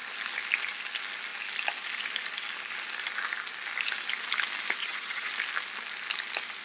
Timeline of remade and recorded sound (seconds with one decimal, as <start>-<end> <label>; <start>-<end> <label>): 0.0-4.8 recorded; 4.8-5.3 remade; 5.3-6.6 recorded